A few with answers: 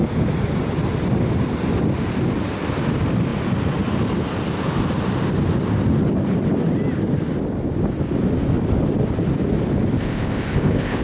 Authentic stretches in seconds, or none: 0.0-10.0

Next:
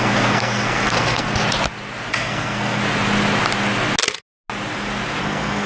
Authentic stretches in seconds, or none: 1.4-2.1; 2.8-5.2